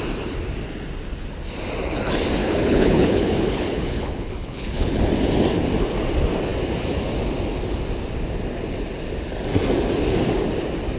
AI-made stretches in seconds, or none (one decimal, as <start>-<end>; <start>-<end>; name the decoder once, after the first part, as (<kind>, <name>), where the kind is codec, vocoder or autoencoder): 2.4-5.0 (codec, HILCodec)